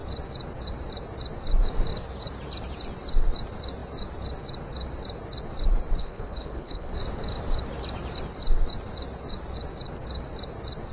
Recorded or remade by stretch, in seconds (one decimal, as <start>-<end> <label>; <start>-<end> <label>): 0.0-6.0 recorded; 6.0-6.9 remade; 6.9-10.9 recorded